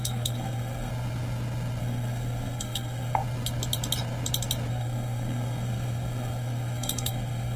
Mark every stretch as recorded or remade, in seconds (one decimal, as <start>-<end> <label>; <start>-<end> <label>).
0.0-0.9 remade; 0.9-1.8 recorded; 1.8-3.2 remade; 3.2-4.7 recorded; 4.7-7.6 remade

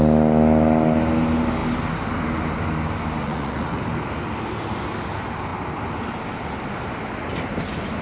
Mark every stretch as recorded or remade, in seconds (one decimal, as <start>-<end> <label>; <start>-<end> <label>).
0.0-3.2 recorded; 3.2-3.8 remade; 3.8-8.0 recorded

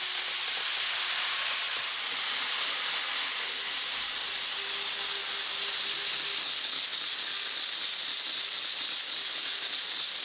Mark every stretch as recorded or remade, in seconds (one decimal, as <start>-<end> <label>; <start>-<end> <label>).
0.0-10.2 recorded

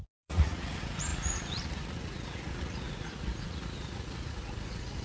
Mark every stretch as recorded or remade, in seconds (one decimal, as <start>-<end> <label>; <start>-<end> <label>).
0.0-5.0 remade